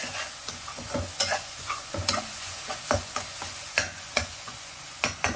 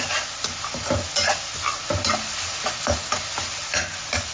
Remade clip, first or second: first